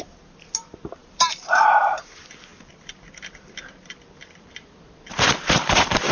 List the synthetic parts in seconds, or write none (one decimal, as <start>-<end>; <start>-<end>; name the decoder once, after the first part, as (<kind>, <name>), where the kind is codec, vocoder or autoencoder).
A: 2.5-6.1 (vocoder, BigVGAN v2)